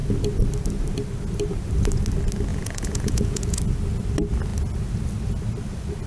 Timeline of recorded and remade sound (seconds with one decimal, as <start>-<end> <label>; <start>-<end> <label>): 0.0-2.5 recorded; 2.5-3.6 remade; 3.6-6.1 recorded